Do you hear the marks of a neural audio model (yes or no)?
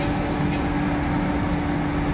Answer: no